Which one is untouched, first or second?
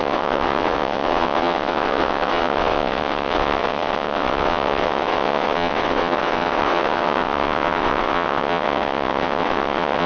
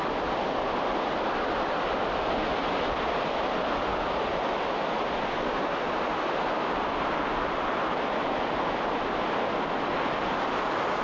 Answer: second